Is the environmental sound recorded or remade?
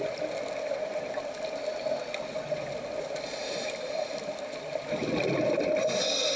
recorded